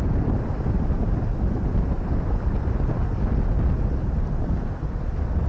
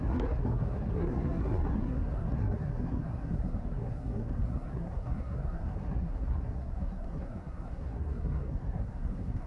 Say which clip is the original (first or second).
first